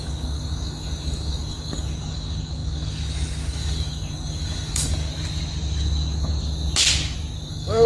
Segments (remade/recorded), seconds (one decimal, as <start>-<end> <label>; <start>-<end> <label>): 0.0-5.1 remade; 5.1-7.5 recorded; 7.5-7.9 remade